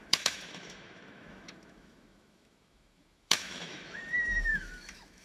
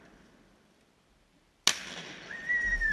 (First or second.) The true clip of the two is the second